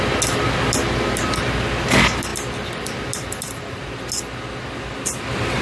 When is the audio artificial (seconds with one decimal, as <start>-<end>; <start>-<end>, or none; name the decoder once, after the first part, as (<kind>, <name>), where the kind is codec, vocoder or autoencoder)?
none